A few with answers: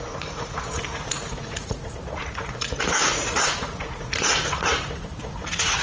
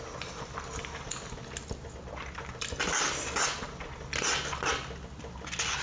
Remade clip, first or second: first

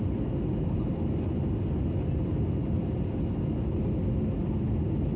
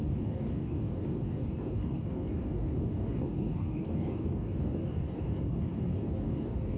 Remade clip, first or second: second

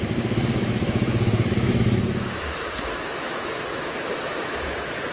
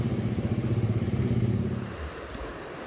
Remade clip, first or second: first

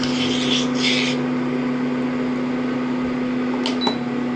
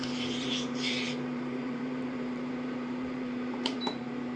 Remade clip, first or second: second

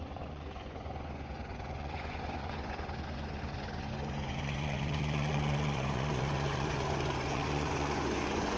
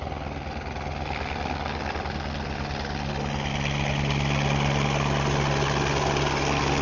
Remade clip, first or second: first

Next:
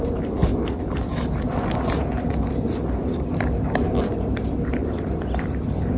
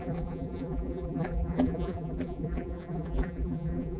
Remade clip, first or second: second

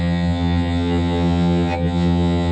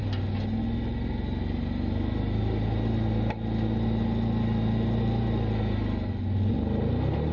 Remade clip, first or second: first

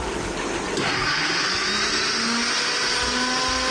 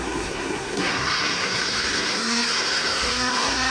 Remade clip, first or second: second